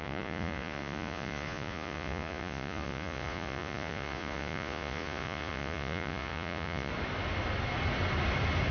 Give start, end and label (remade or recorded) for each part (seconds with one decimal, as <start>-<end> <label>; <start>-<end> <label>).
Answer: 0.0-6.9 remade; 6.9-8.7 recorded